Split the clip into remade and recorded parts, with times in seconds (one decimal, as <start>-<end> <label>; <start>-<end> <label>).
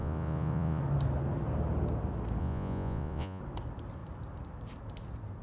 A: 0.0-0.8 remade; 0.8-2.4 recorded; 2.4-3.4 remade; 3.4-5.4 recorded